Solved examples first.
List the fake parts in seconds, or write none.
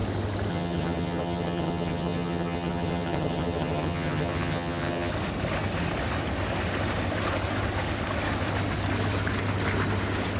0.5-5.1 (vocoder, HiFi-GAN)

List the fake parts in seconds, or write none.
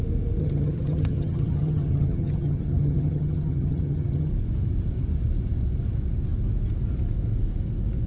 0.4-4.3 (vocoder, HiFi-GAN)